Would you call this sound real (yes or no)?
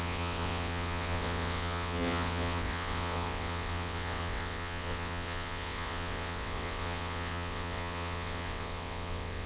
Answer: no